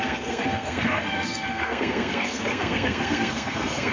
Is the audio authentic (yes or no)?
no